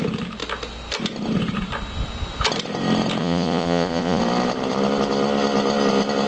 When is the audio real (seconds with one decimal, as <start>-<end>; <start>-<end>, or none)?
0.0-3.2; 4.2-6.3